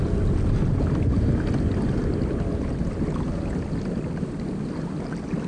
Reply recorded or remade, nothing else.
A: recorded